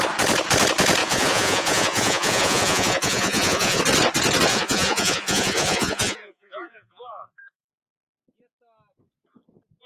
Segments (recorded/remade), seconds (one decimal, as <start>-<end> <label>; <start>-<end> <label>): 0.0-1.0 recorded; 1.0-3.8 remade; 3.8-4.5 recorded; 4.5-7.7 remade; 7.7-9.9 recorded